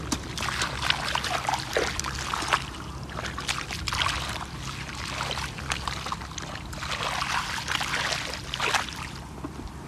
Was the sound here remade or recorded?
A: recorded